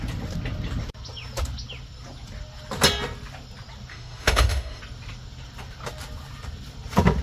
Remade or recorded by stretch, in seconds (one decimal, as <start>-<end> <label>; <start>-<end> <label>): 0.0-3.9 recorded; 3.9-4.8 remade; 4.8-7.2 recorded